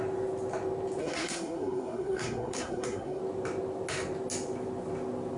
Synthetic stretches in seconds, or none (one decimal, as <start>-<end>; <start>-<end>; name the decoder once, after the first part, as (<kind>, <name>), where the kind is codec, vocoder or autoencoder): 1.0-3.2 (codec, SNAC)